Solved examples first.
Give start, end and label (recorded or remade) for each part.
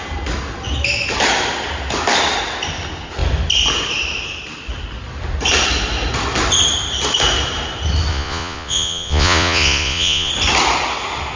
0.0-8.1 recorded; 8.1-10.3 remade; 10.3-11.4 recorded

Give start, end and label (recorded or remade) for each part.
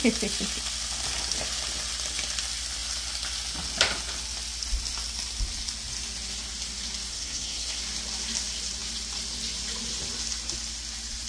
0.0-7.1 recorded; 7.1-7.8 remade; 7.8-11.3 recorded